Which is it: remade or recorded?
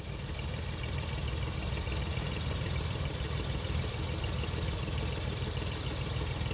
remade